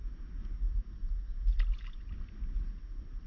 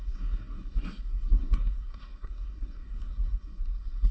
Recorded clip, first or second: first